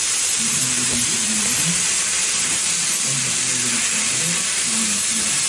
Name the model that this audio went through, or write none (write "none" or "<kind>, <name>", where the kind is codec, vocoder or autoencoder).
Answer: vocoder, BigVGAN v2